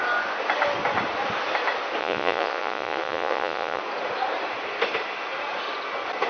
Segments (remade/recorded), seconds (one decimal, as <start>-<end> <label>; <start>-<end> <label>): 0.0-2.0 recorded; 2.0-3.8 remade; 3.8-6.3 recorded